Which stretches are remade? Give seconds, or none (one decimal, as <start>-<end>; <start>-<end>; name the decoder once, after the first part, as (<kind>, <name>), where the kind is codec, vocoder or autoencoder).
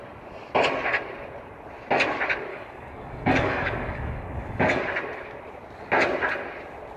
2.5-4.8 (codec, DAC)